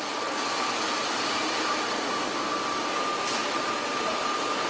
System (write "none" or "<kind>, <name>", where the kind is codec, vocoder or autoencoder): none